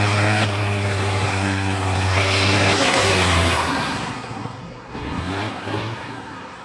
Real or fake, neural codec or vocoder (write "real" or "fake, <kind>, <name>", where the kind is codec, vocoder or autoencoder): fake, codec, SNAC